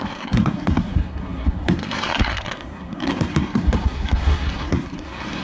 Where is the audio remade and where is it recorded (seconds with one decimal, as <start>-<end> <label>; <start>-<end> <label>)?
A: 0.0-5.4 remade